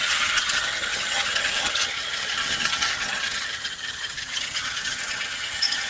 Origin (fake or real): fake